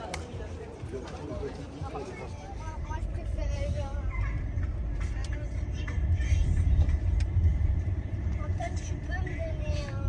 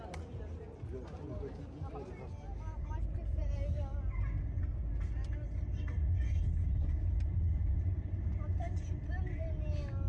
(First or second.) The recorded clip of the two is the second